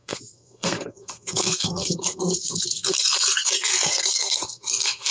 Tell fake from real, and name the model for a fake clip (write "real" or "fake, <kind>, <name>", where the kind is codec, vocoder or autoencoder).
fake, codec, SNAC